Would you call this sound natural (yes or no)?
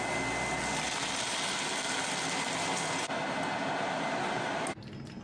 yes